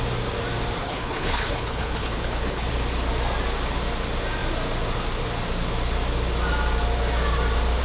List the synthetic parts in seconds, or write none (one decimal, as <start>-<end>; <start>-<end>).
0.8-2.7